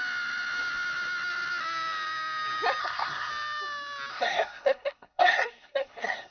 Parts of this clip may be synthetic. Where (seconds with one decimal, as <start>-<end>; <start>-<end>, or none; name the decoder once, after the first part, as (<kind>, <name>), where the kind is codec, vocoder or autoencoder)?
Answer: 2.8-3.3 (codec, SNAC); 4.1-6.3